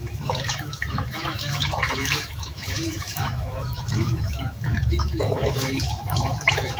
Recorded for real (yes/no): no